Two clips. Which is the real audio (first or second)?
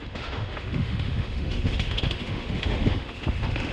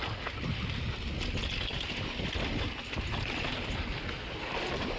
second